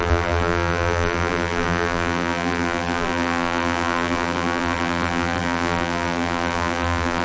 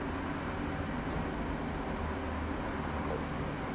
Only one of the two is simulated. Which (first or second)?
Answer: first